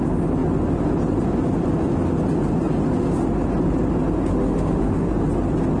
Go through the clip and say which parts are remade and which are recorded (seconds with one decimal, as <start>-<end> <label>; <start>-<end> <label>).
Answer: 0.0-4.3 recorded; 4.3-5.1 remade; 5.1-5.8 recorded